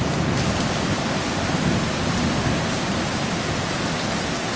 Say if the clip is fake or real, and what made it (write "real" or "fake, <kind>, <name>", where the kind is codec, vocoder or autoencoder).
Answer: real